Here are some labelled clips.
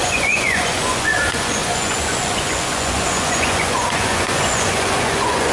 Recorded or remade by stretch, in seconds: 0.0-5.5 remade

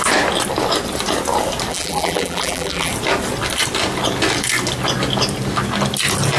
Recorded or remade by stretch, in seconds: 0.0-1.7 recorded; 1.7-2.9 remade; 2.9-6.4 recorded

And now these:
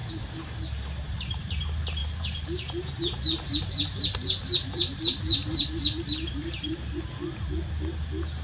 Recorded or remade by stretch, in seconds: 0.0-1.5 remade; 1.5-2.0 recorded; 2.0-7.0 remade; 7.0-8.4 recorded